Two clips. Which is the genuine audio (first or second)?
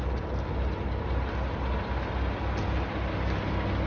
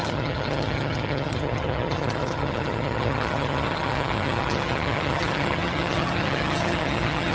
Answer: first